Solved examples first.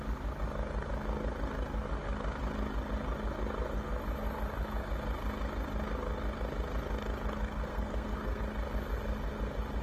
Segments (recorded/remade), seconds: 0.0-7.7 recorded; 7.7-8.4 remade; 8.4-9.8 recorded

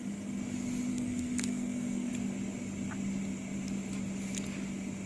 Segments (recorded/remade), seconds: 0.0-0.9 recorded; 0.9-2.1 remade; 2.1-5.1 recorded

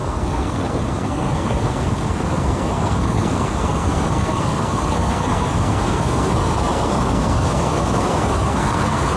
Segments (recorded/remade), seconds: 0.0-9.2 remade

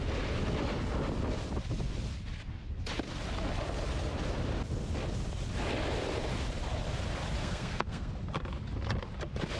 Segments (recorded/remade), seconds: 0.0-7.4 recorded; 7.4-8.1 remade; 8.1-9.6 recorded